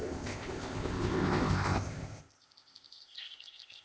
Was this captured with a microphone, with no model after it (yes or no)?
no